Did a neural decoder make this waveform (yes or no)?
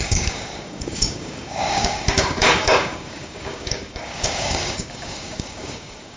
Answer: yes